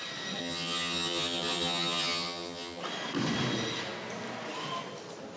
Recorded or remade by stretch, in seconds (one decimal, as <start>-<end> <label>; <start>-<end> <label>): 0.0-0.4 recorded; 0.4-2.8 remade; 2.8-5.4 recorded